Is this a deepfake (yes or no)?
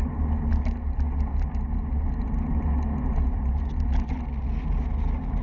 no